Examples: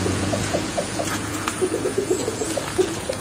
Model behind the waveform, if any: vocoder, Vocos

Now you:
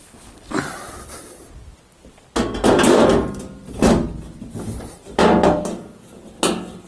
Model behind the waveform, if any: none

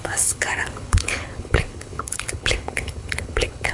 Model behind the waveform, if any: codec, HILCodec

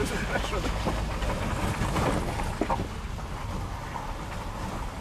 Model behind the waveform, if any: none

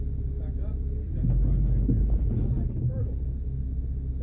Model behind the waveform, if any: none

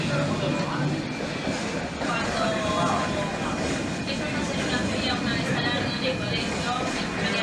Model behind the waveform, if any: none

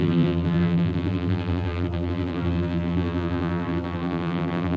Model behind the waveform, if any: vocoder, BigVGAN v2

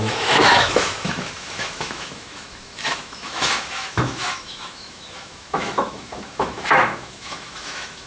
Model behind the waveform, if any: autoencoder, DAC-VAE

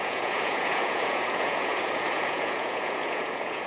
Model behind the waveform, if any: vocoder, Vocos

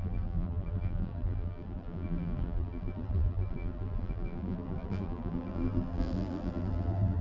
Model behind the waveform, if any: vocoder, BigVGAN v2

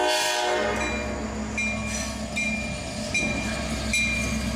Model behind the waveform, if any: none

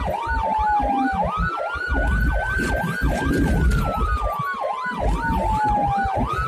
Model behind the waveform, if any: none